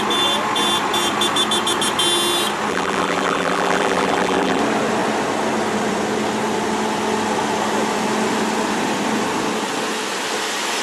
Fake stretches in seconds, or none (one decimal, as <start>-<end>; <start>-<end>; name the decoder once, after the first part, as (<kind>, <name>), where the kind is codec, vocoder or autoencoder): 2.7-4.6 (vocoder, BigVGAN v2)